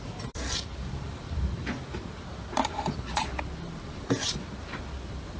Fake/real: real